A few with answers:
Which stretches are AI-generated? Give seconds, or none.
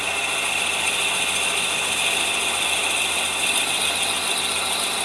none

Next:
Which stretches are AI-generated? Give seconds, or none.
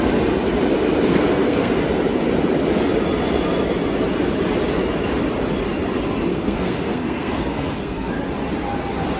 1.1-1.7; 6.3-8.1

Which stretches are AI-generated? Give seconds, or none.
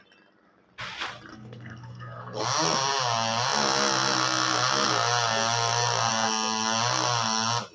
1.3-2.4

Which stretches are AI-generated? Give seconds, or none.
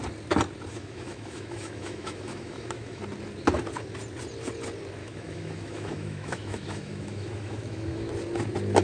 0.7-3.0; 5.0-8.1